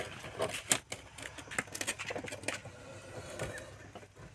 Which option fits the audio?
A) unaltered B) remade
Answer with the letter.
A